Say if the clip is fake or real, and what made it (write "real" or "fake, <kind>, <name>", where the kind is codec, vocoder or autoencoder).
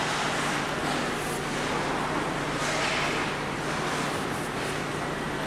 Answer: real